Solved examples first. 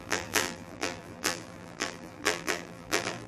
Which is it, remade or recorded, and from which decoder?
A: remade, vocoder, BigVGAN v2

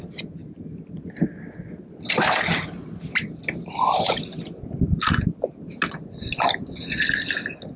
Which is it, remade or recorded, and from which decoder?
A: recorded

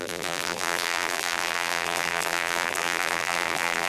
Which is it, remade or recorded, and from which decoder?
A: remade, vocoder, BigVGAN v2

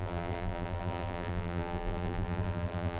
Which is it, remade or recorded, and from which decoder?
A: remade, vocoder, BigVGAN v2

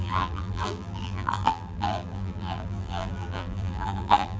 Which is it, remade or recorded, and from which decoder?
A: remade, vocoder, BigVGAN v2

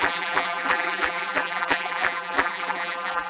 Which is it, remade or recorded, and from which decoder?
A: remade, vocoder, BigVGAN v2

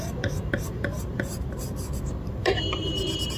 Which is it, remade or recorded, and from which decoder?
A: remade, vocoder, BigVGAN v2